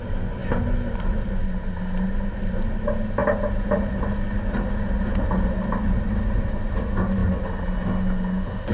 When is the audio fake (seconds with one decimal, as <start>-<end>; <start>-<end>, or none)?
none